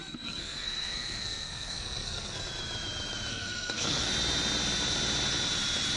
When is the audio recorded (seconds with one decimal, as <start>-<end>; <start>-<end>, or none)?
2.4-3.3; 4.1-6.0